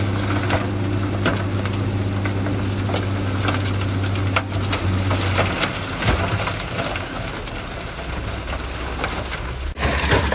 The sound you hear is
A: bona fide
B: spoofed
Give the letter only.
A